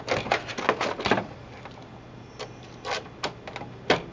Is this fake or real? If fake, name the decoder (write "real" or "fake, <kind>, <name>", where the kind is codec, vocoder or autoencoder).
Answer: real